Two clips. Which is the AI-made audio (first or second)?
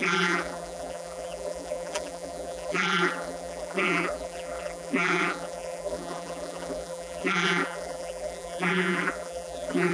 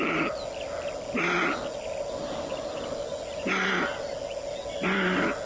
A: first